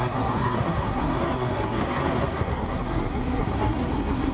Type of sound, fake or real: fake